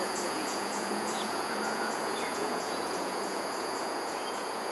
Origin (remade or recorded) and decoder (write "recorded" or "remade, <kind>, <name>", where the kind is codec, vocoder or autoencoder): remade, vocoder, Vocos